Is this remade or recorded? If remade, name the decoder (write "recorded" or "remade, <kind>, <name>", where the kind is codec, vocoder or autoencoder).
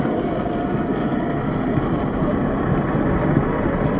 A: recorded